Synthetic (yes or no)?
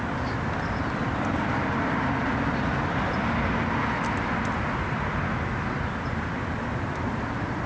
no